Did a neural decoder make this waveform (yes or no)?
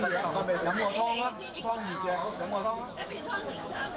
yes